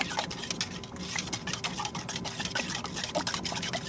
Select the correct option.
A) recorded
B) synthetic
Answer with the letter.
A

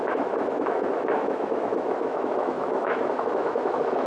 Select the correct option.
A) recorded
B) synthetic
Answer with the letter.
B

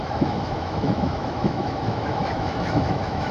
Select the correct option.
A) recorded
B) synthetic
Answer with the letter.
B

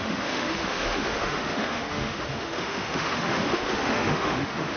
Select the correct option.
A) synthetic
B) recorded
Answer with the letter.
A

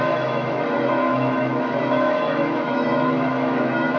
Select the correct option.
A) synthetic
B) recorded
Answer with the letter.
A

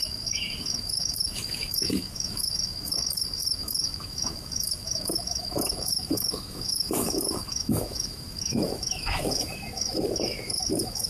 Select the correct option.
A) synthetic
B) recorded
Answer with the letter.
A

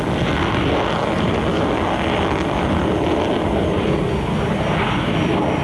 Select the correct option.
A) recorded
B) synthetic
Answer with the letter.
A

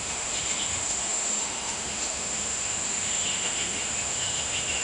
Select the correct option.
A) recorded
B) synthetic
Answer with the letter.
B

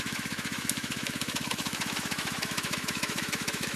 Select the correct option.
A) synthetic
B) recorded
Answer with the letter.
A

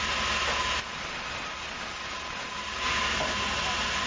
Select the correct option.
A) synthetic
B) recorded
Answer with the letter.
B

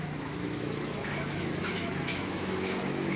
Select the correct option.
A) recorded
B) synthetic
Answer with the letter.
B